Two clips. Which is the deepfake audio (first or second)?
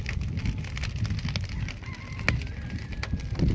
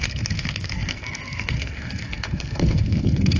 second